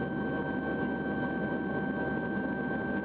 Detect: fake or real real